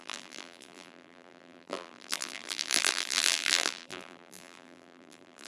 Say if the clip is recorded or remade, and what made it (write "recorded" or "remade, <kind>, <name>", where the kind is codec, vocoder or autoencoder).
remade, vocoder, BigVGAN v2